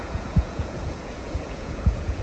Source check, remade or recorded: remade